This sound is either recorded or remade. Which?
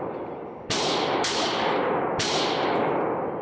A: recorded